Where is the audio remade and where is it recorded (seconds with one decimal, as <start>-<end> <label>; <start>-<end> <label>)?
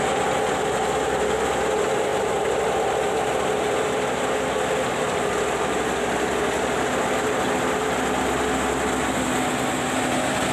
0.0-10.5 recorded